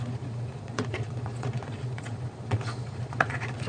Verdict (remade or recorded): remade